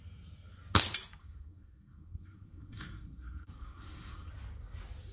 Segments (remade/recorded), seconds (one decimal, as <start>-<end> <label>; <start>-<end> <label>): 0.0-1.2 recorded; 1.2-4.3 remade; 4.3-5.1 recorded